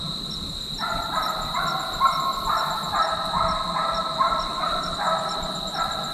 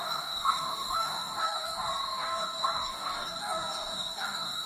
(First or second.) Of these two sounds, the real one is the first